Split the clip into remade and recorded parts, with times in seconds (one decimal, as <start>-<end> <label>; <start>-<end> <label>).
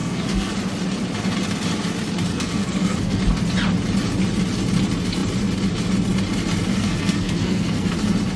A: 0.0-0.5 remade; 0.5-2.3 recorded; 2.3-3.2 remade; 3.2-6.7 recorded; 6.7-7.9 remade; 7.9-8.4 recorded